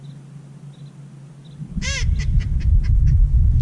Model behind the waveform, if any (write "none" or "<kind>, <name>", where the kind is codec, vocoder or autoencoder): none